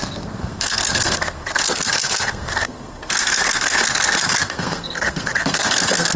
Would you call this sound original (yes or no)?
no